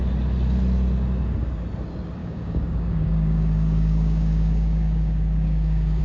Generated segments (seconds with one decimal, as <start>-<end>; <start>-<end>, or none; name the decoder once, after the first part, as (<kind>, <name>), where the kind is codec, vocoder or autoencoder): 2.2-6.0 (codec, DAC)